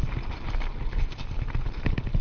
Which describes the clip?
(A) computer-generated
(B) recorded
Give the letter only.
B